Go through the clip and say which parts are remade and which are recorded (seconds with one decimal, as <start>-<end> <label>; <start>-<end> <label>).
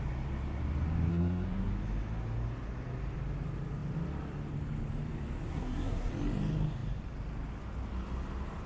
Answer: 0.0-1.1 recorded; 1.1-1.7 remade; 1.7-5.5 recorded; 5.5-6.1 remade; 6.1-8.7 recorded